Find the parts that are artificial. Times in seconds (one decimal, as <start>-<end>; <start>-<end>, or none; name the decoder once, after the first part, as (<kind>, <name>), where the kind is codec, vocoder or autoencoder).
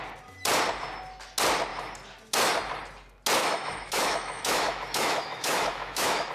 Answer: 3.4-6.3 (autoencoder, DAC-VAE)